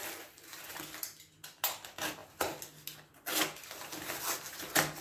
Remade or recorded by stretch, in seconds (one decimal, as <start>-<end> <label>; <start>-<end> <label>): 0.0-5.0 recorded